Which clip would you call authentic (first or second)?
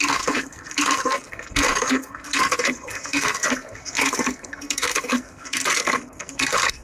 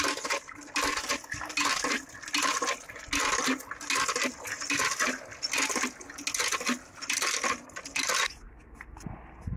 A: second